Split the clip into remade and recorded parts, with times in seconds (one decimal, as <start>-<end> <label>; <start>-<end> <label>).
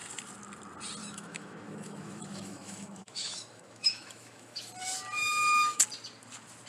0.0-1.0 recorded; 1.0-4.7 remade; 4.7-5.2 recorded; 5.2-5.8 remade; 5.8-6.7 recorded